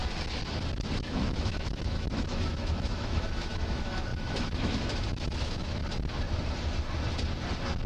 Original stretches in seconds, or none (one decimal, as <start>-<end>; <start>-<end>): 0.0-1.0; 5.8-7.9

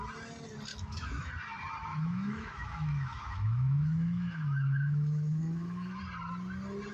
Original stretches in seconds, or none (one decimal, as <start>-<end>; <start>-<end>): 0.0-0.7; 1.3-1.9; 6.0-6.9

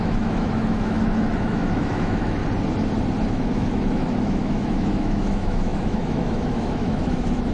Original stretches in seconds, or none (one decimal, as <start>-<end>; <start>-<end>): 2.4-3.3

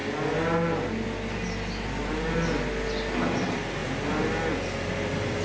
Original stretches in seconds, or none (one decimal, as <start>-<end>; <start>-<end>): 0.0-5.4

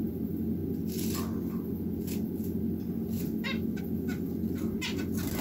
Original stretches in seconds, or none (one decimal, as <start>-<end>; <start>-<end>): 0.0-5.4

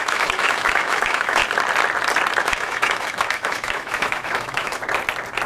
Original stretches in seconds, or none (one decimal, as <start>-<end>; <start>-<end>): 1.4-2.4; 4.8-5.5